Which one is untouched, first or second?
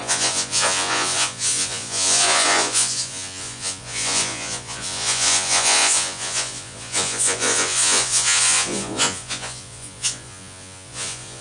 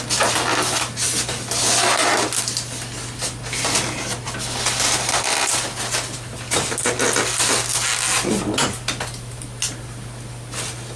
second